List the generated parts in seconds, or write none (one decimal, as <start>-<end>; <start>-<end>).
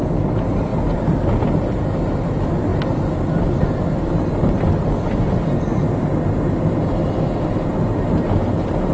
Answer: none